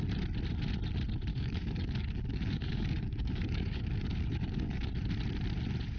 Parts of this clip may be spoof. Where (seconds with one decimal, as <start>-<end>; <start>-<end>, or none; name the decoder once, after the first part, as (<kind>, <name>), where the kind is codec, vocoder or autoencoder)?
1.3-4.9 (codec, DAC)